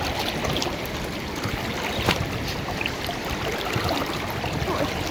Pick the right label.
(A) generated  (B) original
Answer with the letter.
B